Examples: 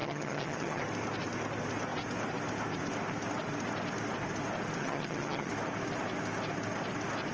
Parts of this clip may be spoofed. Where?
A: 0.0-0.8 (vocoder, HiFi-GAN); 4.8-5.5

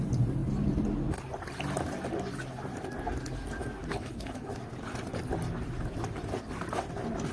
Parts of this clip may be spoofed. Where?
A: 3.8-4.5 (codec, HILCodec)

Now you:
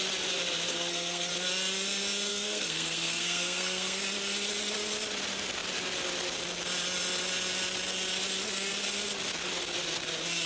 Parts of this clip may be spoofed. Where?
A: 0.7-1.3 (codec, SNAC); 2.3-4.0

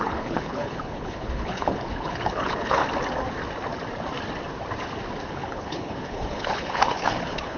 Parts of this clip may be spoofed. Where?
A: 0.0-2.8 (codec, HILCodec); 5.3-7.6

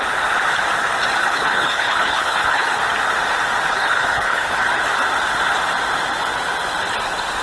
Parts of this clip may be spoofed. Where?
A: 1.2-2.8 (codec, HILCodec); 3.7-4.7

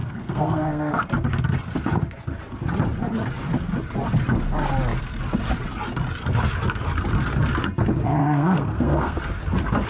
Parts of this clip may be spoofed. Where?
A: 0.0-0.9 (codec, SNAC); 8.2-9.2

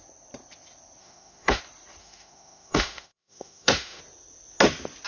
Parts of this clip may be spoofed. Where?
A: 1.0-1.6 (autoencoder, DAC-VAE); 2.0-4.0

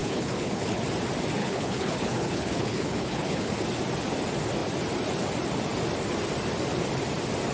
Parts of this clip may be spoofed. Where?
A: 0.0-0.8 (codec, HILCodec); 1.4-3.5